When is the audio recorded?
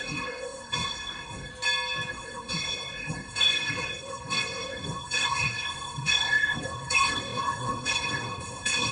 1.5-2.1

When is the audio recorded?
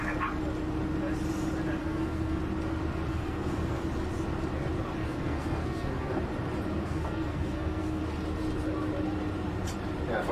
0.0-1.8; 2.4-3.1; 3.8-5.0; 6.1-6.8; 8.0-10.3